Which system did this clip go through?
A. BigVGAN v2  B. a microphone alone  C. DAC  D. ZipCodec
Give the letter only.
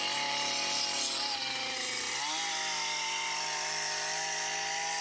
B